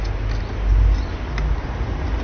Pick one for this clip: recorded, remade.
recorded